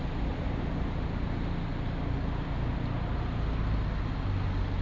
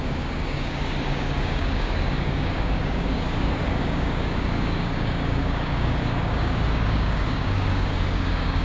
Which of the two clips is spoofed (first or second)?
second